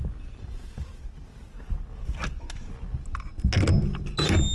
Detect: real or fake real